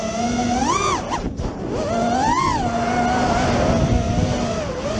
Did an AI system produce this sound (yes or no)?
no